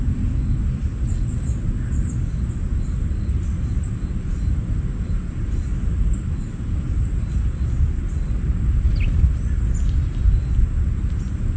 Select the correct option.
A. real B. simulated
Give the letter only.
A